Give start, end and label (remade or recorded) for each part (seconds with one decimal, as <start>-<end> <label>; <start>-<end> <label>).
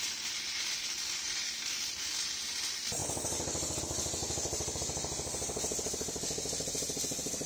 0.0-7.5 recorded